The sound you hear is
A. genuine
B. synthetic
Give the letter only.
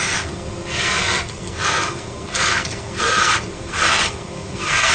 B